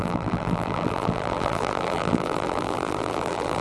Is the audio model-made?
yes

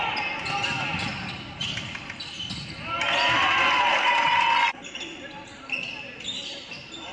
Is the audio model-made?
no